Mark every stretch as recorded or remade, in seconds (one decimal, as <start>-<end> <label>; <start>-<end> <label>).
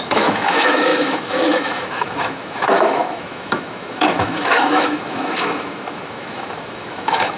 0.0-7.4 remade